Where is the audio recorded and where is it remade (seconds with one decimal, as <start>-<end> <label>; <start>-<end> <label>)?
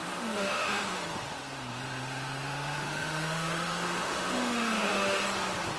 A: 0.0-1.0 remade; 1.0-1.7 recorded; 1.7-5.2 remade; 5.2-5.8 recorded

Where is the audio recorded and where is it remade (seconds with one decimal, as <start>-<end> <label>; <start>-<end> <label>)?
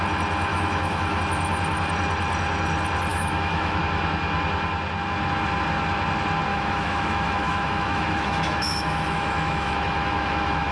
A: 0.0-0.5 recorded; 0.5-1.2 remade; 1.2-3.1 recorded; 3.1-3.8 remade; 3.8-6.5 recorded; 6.5-10.7 remade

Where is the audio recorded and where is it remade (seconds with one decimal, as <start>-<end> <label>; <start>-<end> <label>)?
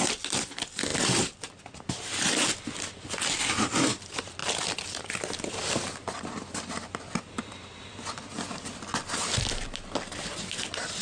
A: 0.0-11.0 recorded